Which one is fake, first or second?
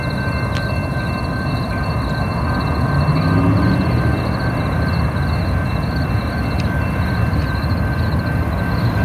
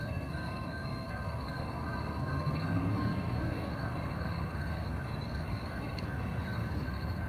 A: second